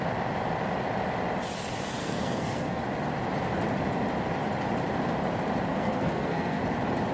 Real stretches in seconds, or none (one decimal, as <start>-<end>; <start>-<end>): 0.0-2.0; 2.8-5.7; 6.6-7.1